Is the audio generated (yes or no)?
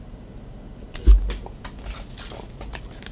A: no